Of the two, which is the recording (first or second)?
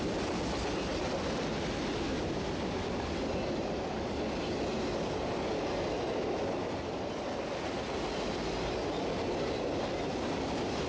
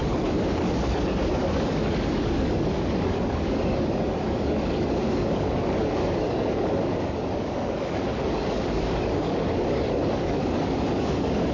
first